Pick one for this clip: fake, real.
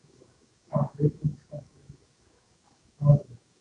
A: fake